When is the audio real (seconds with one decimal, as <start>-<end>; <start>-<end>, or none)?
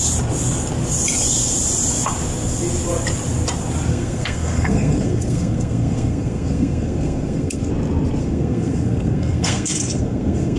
0.0-3.9; 7.7-8.2